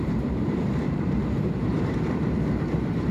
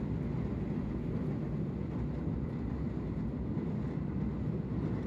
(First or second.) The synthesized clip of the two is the first